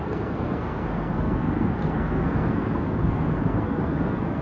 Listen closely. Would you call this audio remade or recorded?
remade